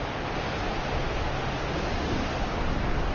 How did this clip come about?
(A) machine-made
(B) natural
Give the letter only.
B